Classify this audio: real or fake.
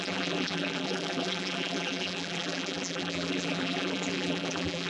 fake